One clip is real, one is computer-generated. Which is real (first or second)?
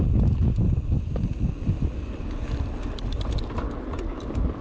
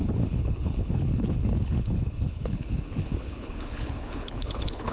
first